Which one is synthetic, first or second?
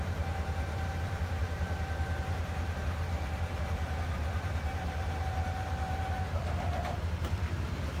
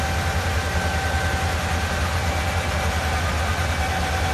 first